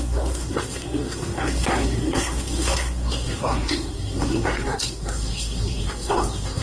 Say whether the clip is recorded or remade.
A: remade